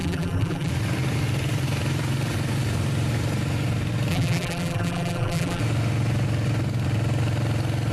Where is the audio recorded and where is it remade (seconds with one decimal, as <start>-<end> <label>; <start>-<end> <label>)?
0.0-0.7 remade; 0.7-4.1 recorded; 4.1-5.6 remade; 5.6-7.9 recorded